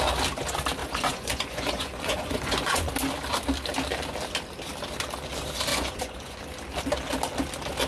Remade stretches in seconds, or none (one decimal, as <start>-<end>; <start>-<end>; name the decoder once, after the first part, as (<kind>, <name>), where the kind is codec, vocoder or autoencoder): 0.8-2.9 (vocoder, Vocos); 5.7-6.4